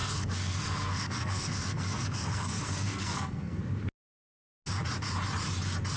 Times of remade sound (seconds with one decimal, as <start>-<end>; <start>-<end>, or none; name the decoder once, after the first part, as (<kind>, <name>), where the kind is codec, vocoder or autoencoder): 0.0-3.6 (codec, SNAC)

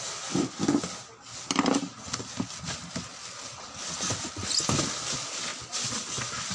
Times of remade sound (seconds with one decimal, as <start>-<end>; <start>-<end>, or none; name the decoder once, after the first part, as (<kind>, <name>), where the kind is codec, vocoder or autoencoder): none